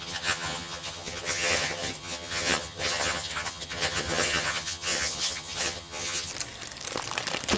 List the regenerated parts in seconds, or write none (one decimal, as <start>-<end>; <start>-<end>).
0.0-6.3